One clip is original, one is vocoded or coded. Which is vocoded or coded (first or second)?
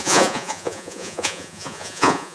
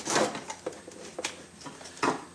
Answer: first